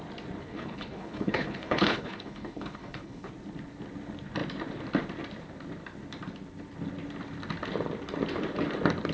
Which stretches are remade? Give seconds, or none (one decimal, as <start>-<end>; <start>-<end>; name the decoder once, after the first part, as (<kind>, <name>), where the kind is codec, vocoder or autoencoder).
0.4-3.3 (codec, HILCodec)